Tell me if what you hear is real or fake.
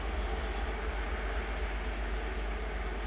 real